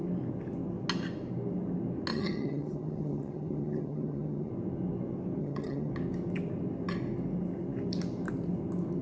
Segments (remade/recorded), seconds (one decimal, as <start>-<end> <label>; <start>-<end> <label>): 0.0-2.1 recorded; 2.1-4.5 remade; 4.5-5.4 recorded; 5.4-5.9 remade; 5.9-9.0 recorded